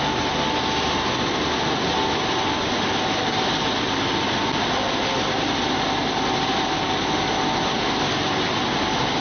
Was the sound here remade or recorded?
recorded